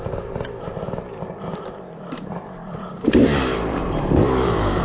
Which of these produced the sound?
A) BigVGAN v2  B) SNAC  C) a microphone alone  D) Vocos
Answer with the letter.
A